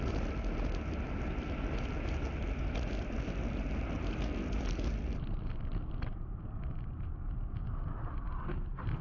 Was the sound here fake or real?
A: real